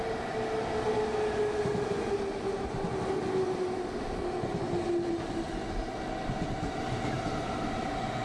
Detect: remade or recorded recorded